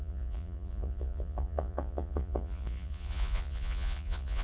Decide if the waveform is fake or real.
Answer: fake